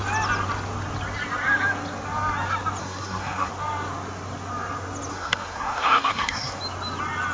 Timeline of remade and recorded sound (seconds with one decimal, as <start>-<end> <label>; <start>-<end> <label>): 0.0-2.8 recorded; 2.8-3.5 remade; 3.5-5.1 recorded; 5.1-6.6 remade; 6.6-7.3 recorded